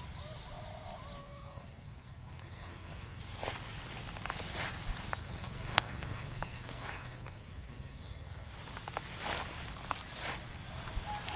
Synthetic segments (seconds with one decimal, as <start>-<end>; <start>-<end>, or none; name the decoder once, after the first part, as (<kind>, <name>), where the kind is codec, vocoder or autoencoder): 1.2-3.2 (codec, SNAC); 5.2-8.5